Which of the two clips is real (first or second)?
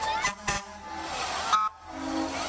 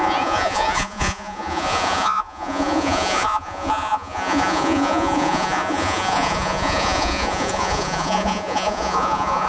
first